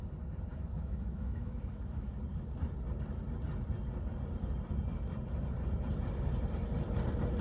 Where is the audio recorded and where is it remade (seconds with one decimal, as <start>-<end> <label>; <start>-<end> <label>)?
0.0-0.5 recorded; 0.5-2.2 remade; 2.2-7.4 recorded